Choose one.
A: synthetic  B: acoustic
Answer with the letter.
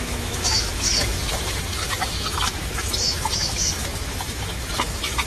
A